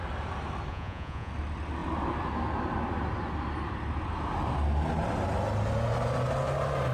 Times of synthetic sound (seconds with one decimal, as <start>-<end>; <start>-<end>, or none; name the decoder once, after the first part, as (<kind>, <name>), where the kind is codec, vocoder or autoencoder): 0.7-1.3 (vocoder, Vocos)